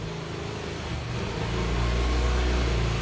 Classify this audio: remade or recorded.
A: recorded